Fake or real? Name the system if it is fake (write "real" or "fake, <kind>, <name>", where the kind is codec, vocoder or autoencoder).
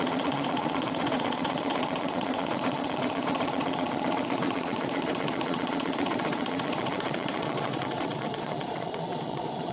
fake, vocoder, Vocos